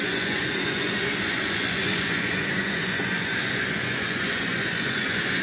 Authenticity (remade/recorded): remade